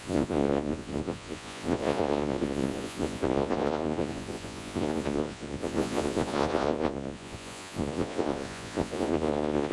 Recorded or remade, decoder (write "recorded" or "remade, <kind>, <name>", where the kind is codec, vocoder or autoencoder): remade, vocoder, Vocos